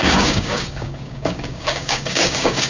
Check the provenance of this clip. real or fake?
fake